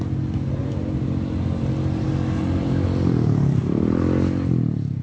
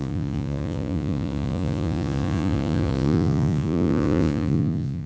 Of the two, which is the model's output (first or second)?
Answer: second